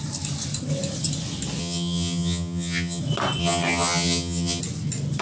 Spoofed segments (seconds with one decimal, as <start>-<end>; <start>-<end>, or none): 1.6-3.0; 3.4-4.6